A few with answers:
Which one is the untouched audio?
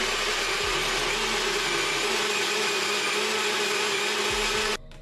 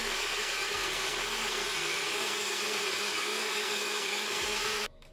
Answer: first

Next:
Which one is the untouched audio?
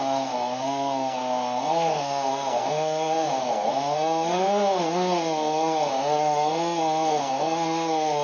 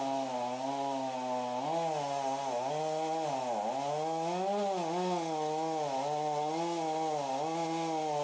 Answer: second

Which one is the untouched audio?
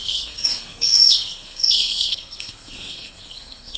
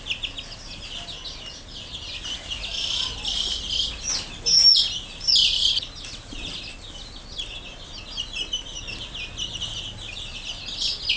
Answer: second